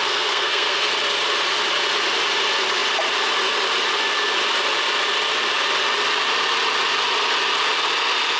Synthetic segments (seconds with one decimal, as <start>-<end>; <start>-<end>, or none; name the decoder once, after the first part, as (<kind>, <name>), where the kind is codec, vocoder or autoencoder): 0.0-0.9 (codec, SNAC)

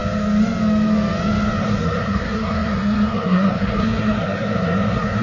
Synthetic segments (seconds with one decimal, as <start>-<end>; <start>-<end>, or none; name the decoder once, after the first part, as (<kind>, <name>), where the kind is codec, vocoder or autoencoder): 1.6-5.2 (codec, SNAC)

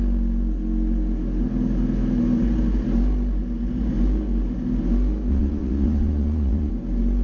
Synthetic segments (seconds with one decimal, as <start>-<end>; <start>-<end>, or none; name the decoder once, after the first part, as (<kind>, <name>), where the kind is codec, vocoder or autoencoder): 5.3-6.7 (vocoder, Vocos)

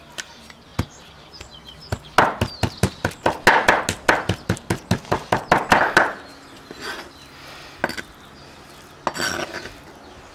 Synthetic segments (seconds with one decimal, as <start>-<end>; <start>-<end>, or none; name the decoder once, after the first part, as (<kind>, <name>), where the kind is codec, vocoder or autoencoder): none

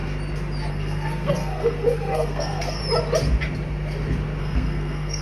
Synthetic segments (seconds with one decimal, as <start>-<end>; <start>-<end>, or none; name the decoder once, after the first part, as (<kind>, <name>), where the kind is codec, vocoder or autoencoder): 0.7-2.8 (codec, SNAC); 4.4-5.2

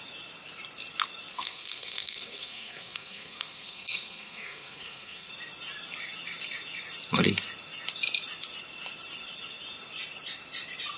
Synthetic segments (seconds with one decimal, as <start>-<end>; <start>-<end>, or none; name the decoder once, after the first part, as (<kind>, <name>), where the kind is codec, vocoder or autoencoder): 1.3-5.3 (codec, SNAC)

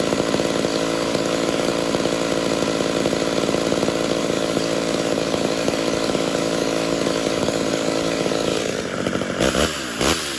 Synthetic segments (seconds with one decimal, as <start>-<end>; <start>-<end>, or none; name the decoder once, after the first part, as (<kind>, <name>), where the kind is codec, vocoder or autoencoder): 0.7-1.7 (codec, DAC); 4.2-8.6

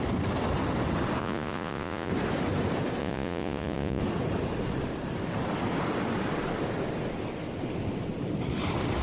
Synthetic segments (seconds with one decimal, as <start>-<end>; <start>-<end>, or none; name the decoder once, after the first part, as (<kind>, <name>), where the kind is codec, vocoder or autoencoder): 1.2-2.1 (vocoder, Vocos); 3.0-4.0